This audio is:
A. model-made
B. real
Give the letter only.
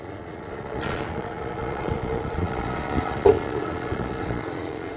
A